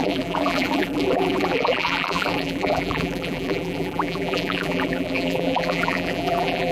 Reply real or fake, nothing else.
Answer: fake